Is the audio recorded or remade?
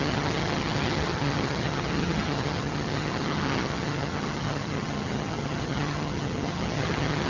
remade